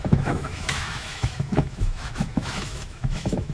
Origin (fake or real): fake